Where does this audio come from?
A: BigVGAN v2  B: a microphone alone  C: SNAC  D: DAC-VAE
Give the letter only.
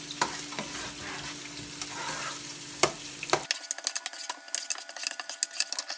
B